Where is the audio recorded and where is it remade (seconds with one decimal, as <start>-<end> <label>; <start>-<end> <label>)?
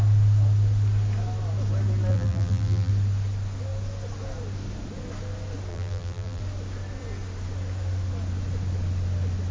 0.0-2.1 recorded; 2.1-2.9 remade; 2.9-5.7 recorded; 5.7-6.4 remade; 6.4-9.5 recorded